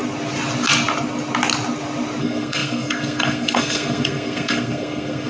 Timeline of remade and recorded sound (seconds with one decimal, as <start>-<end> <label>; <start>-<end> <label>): 0.0-2.2 recorded; 2.2-5.3 remade